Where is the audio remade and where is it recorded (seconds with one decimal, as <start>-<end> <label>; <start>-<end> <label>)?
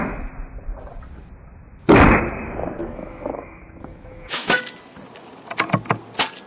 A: 0.0-2.8 recorded; 2.8-4.6 remade; 4.6-6.5 recorded